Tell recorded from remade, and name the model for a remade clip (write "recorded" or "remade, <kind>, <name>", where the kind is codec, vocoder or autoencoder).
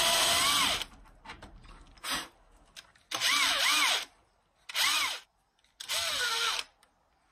recorded